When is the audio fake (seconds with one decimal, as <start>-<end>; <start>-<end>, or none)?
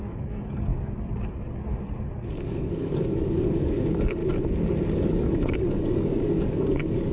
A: 0.0-0.7; 2.3-4.2; 4.8-7.1